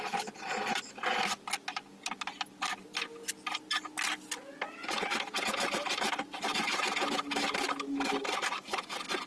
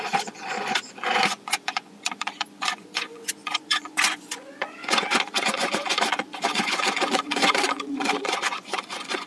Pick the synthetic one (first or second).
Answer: second